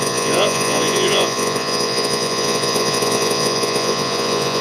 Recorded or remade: remade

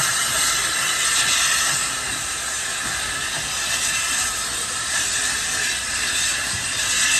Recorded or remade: recorded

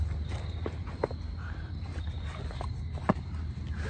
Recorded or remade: recorded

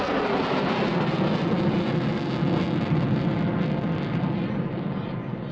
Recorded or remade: recorded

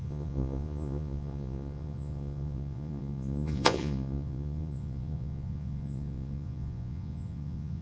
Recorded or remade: remade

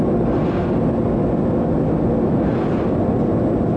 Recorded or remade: recorded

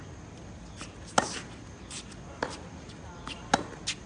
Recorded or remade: recorded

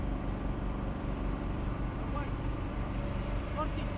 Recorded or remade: remade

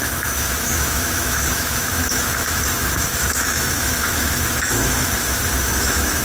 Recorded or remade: remade